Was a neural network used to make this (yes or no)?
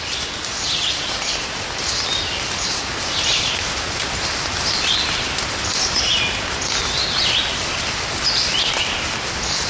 no